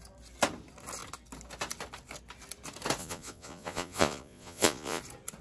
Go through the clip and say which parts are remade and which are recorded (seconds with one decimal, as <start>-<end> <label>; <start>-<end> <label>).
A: 0.0-3.0 recorded; 3.0-5.0 remade; 5.0-5.4 recorded

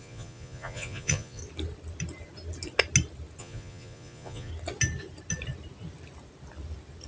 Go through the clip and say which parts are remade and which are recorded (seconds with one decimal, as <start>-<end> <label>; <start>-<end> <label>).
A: 0.0-1.4 remade; 1.4-3.4 recorded; 3.4-4.5 remade; 4.5-7.1 recorded

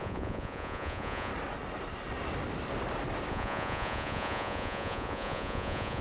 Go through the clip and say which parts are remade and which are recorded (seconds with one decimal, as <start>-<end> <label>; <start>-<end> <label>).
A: 0.0-1.3 remade; 1.3-3.3 recorded; 3.3-6.0 remade

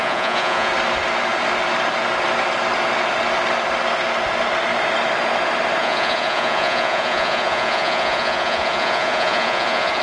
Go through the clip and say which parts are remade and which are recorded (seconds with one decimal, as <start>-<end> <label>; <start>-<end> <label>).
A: 0.0-0.7 remade; 0.7-5.8 recorded; 5.8-10.0 remade

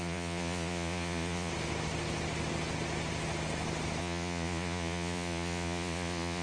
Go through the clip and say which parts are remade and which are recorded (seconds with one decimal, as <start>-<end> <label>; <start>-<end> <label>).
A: 0.0-1.5 remade; 1.5-4.0 recorded; 4.0-6.4 remade

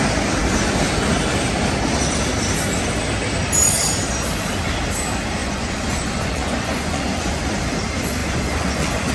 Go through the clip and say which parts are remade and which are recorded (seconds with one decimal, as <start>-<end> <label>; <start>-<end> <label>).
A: 0.0-5.4 recorded; 5.4-7.4 remade; 7.4-8.2 recorded; 8.2-9.1 remade

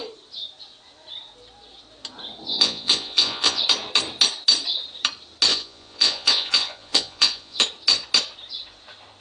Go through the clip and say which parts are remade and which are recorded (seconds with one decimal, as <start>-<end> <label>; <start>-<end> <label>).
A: 0.0-2.5 recorded; 2.5-3.6 remade; 3.6-5.5 recorded; 5.5-7.6 remade; 7.6-9.2 recorded

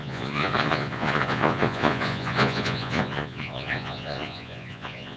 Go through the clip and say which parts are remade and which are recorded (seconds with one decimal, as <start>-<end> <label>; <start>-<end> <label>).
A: 0.0-5.2 remade